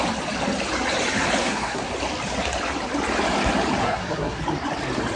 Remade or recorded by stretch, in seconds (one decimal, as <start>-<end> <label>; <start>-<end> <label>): 0.0-1.4 recorded; 1.4-1.9 remade; 1.9-3.8 recorded; 3.8-4.4 remade; 4.4-5.2 recorded